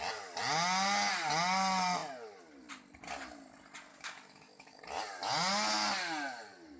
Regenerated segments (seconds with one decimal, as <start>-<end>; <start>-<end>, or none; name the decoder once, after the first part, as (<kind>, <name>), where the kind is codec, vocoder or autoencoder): 3.9-4.8 (codec, DAC)